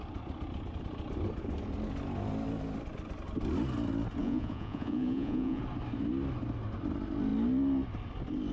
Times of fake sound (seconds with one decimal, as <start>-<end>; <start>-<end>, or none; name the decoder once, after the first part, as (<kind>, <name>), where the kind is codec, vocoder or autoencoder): 4.2-5.6 (vocoder, Vocos)